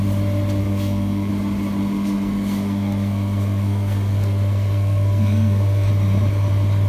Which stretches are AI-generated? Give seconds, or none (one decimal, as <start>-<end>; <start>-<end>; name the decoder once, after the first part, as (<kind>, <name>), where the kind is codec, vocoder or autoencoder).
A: 0.6-1.3 (codec, SNAC); 1.8-5.9